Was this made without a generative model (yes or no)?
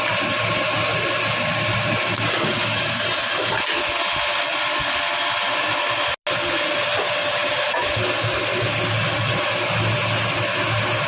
yes